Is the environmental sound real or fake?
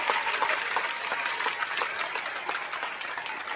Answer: real